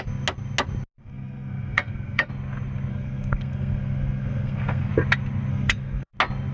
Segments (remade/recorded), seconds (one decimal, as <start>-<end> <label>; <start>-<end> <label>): 0.0-1.0 recorded; 1.0-2.3 remade; 2.3-2.9 recorded; 2.9-4.9 remade; 4.9-5.5 recorded; 5.5-6.1 remade; 6.1-6.5 recorded